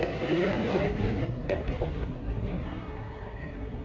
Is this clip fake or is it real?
fake